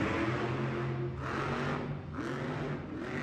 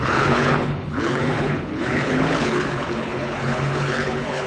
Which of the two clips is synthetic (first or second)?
second